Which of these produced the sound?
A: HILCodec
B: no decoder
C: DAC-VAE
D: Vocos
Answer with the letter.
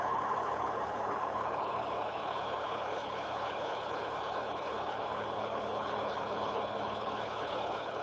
A